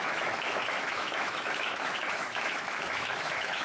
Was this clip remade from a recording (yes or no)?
yes